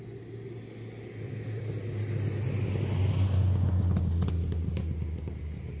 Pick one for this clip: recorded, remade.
recorded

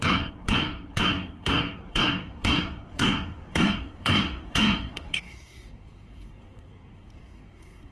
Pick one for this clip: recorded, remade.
remade